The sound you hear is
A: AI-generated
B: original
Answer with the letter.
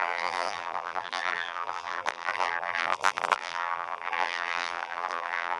A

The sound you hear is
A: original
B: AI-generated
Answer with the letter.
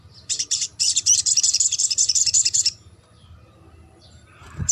B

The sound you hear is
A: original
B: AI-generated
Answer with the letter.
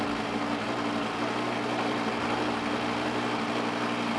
A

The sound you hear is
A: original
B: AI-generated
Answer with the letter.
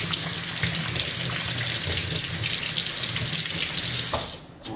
A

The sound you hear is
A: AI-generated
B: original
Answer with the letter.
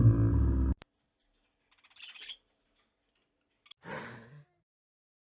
B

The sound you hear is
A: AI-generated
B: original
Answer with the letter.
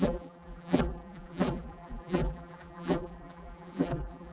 A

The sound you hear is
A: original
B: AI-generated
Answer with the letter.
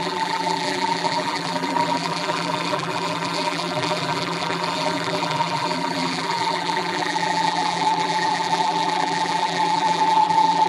B